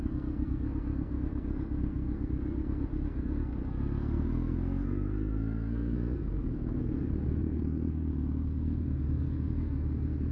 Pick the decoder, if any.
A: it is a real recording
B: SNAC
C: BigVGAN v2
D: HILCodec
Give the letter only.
B